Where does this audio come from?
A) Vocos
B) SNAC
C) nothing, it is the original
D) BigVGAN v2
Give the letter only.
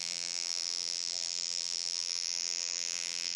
D